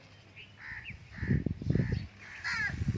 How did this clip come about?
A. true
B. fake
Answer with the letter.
A